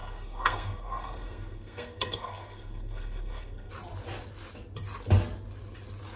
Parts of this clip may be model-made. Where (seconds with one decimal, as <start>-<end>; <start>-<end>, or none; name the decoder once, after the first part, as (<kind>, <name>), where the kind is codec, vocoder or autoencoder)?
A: 0.0-3.7 (codec, SNAC)